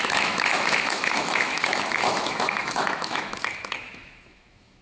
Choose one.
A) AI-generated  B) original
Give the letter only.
A